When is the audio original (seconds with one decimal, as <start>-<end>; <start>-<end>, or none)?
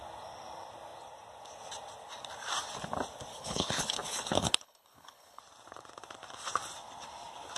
0.0-3.3; 5.4-7.6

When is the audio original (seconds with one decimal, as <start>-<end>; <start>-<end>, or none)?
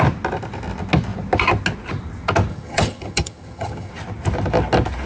0.0-2.5; 3.9-5.1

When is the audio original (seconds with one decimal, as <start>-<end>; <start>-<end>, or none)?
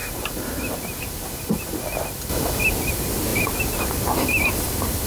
0.0-5.1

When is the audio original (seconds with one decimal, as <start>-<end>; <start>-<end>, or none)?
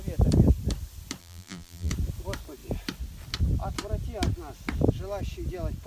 0.0-1.2; 1.9-5.9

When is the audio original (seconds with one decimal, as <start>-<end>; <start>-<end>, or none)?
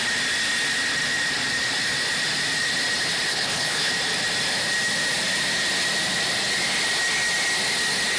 0.0-3.3; 3.9-8.2